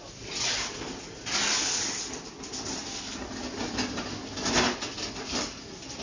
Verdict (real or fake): real